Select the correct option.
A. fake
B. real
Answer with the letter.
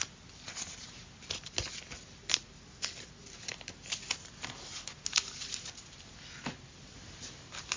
B